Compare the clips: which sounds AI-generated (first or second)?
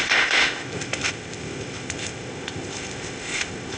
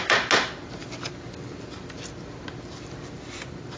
first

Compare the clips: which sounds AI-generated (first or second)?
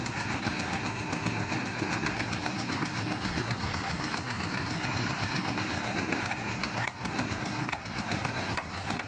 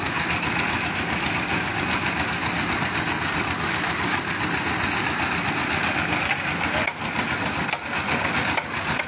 first